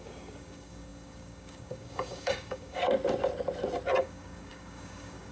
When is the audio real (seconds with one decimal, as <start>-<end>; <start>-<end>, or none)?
2.8-4.0